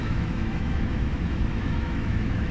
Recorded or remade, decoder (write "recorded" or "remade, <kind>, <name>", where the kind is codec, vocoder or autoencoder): remade, autoencoder, DAC-VAE